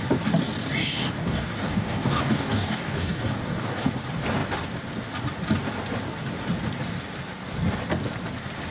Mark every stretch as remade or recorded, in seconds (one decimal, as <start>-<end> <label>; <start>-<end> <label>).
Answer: 0.0-0.8 recorded; 0.8-3.9 remade; 3.9-8.7 recorded